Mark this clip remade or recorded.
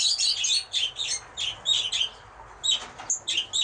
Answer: recorded